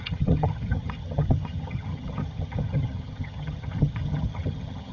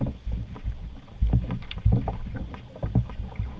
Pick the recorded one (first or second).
second